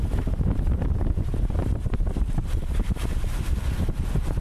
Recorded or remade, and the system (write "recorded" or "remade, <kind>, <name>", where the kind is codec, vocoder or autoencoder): remade, vocoder, BigVGAN v2